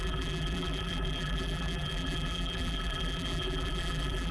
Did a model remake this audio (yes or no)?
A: yes